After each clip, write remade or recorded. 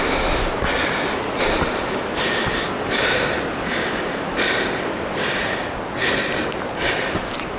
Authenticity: recorded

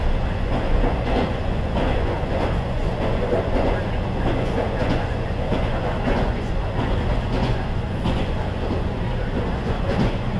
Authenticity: remade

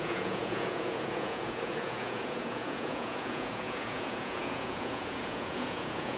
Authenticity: remade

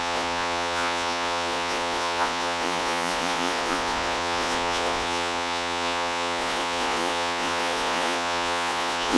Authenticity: remade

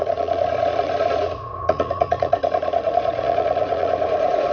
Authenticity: remade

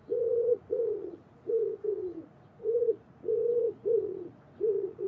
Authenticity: remade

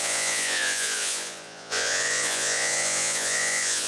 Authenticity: remade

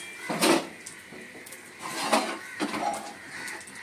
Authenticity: recorded